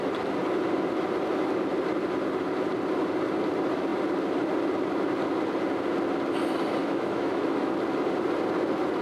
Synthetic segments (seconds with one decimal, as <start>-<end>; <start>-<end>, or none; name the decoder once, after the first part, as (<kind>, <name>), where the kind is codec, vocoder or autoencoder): 6.8-7.7 (autoencoder, DAC-VAE)